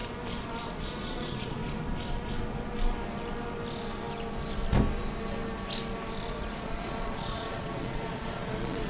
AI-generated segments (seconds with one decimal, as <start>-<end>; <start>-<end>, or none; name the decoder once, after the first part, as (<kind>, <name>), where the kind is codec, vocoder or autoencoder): 0.7-1.6 (vocoder, Vocos); 6.3-8.9